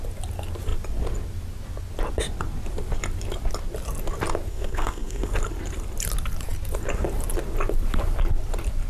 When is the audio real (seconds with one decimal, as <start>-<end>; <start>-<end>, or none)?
0.0-4.5; 5.3-8.9